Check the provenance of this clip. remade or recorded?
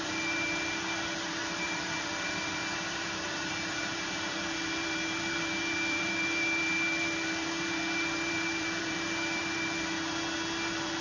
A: remade